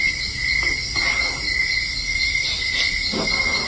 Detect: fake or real real